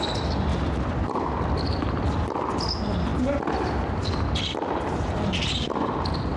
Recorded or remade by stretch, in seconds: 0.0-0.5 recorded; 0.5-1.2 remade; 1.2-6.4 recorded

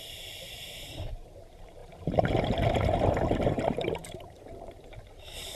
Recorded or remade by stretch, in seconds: 0.0-5.6 remade